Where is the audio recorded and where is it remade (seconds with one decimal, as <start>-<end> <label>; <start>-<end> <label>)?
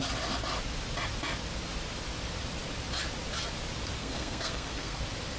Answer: 0.0-4.0 recorded; 4.0-5.0 remade; 5.0-5.4 recorded